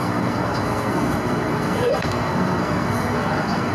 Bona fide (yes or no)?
no